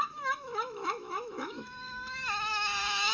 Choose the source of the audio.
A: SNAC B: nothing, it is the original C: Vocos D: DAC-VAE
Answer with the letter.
D